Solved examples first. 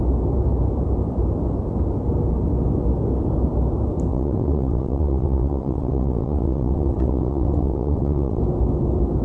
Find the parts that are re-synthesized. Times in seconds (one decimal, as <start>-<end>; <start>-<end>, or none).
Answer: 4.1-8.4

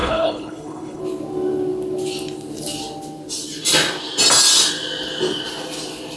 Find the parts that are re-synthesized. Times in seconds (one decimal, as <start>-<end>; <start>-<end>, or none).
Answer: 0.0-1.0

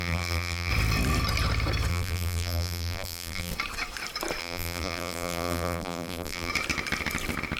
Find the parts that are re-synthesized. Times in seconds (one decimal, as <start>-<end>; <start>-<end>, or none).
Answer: 0.0-0.7; 1.9-3.5; 4.4-6.5

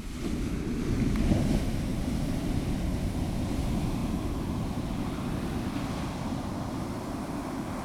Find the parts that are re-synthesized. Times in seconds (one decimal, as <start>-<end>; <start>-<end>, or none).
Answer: none

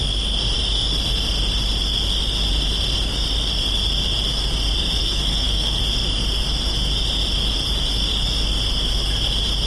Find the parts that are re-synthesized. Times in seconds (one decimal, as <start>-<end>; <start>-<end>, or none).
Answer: 5.0-5.8

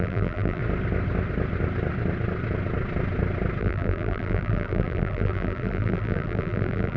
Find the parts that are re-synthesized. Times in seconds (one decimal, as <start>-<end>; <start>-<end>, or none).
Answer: 0.0-0.6; 3.6-7.0

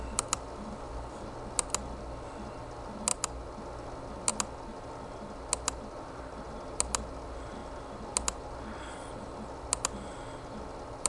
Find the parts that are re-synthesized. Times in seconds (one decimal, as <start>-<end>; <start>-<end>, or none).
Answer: none

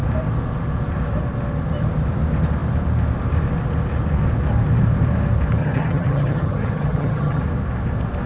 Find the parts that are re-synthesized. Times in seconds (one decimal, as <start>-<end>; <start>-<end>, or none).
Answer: 5.6-7.4